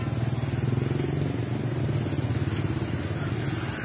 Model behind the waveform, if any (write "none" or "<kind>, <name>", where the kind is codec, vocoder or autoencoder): none